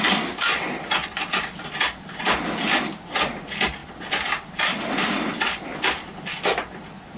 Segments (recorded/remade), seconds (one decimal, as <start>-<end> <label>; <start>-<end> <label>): 0.0-7.2 recorded

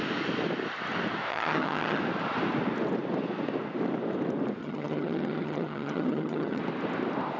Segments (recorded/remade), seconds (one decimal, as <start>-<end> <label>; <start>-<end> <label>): 0.0-1.3 recorded; 1.3-2.0 remade; 2.0-4.6 recorded; 4.6-6.6 remade; 6.6-7.4 recorded

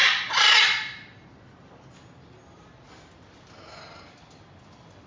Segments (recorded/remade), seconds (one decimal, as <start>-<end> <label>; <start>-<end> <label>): 0.0-5.1 recorded

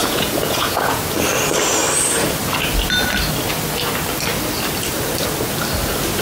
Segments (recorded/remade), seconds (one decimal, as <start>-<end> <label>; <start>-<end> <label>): 0.0-1.0 remade; 1.0-6.2 recorded